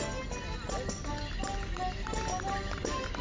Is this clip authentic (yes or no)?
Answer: yes